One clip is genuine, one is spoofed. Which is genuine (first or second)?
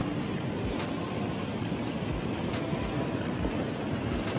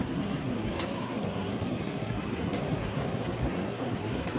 first